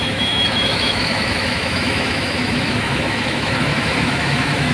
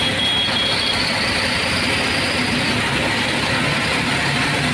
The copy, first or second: first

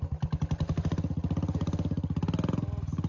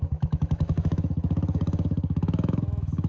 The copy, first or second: second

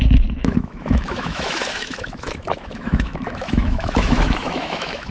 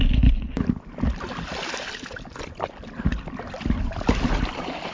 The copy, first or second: first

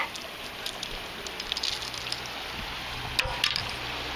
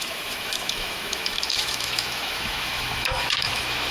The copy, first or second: second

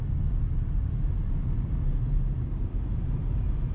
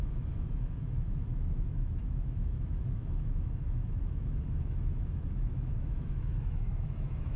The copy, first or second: second